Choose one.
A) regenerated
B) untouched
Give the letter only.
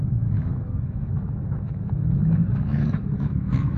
A